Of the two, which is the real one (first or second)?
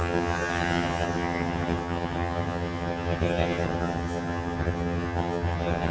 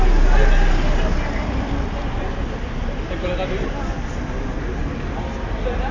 second